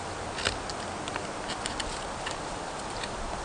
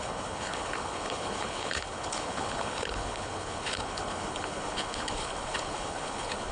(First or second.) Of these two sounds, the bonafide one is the first